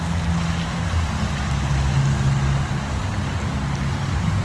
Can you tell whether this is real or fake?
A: real